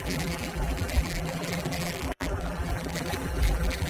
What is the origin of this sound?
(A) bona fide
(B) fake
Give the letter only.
B